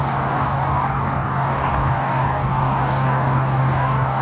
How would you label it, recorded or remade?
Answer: remade